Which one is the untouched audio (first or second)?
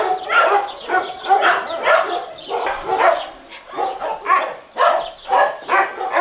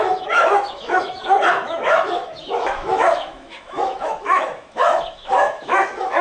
first